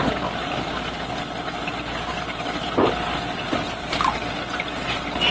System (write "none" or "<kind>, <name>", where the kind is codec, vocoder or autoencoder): none